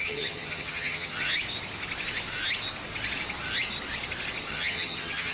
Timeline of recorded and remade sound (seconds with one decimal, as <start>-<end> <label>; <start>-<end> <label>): 0.0-1.3 remade; 1.3-4.5 recorded; 4.5-5.3 remade

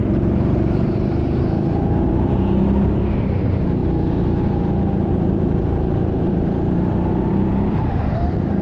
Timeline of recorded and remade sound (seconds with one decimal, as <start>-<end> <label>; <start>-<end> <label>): 0.0-3.8 remade; 3.8-4.9 recorded; 4.9-8.6 remade

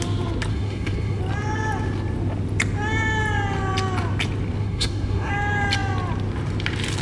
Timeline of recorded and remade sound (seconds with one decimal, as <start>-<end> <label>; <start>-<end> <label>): 0.0-0.5 recorded; 0.5-1.2 remade; 1.2-4.6 recorded; 4.6-5.3 remade; 5.3-7.0 recorded

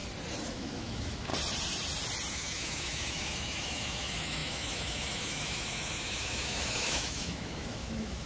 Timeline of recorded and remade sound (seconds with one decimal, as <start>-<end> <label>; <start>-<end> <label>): 0.0-0.5 recorded; 0.5-1.3 remade; 1.3-2.3 recorded; 2.3-8.3 remade

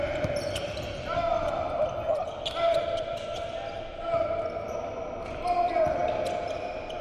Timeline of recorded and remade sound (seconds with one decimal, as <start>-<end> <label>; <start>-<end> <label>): 0.0-0.6 recorded; 0.6-1.6 remade; 1.6-7.0 recorded

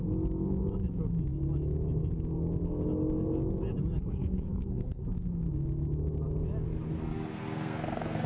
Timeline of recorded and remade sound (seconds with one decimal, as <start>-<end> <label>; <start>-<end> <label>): 0.0-4.0 recorded; 4.0-5.0 remade; 5.0-7.0 recorded; 7.0-8.3 remade

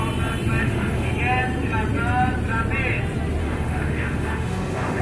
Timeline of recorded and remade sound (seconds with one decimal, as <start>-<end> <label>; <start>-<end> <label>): 0.0-0.6 recorded; 0.6-1.1 remade; 1.1-3.4 recorded; 3.4-5.0 remade

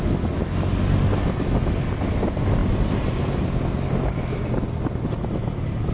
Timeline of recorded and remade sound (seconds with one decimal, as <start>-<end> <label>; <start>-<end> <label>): 0.0-5.9 recorded